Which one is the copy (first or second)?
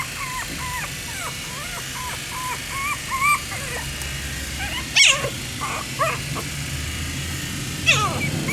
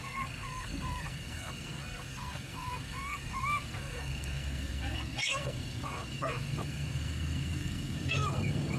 second